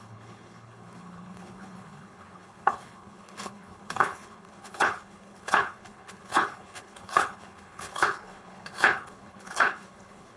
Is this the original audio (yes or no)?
no